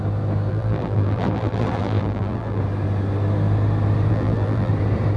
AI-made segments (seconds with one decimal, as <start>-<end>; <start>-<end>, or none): 0.5-2.6; 4.1-4.7